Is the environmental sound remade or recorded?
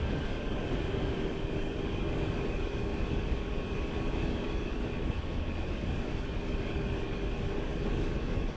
remade